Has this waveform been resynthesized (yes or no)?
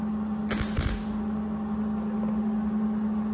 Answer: no